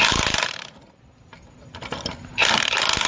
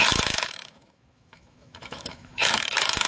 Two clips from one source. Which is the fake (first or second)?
second